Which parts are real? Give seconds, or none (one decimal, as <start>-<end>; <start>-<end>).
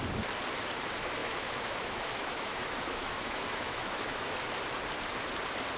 0.0-1.2; 4.5-5.8